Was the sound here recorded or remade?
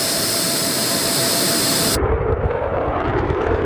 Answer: remade